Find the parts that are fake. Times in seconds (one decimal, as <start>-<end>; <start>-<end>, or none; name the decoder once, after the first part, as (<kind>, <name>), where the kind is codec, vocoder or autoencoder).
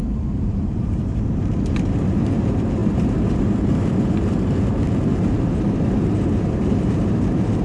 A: 0.0-7.6 (vocoder, BigVGAN v2)